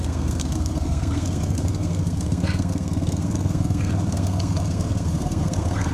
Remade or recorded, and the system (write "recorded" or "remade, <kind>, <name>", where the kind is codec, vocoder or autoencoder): remade, codec, SNAC